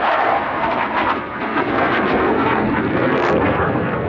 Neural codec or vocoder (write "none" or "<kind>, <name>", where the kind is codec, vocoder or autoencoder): codec, SNAC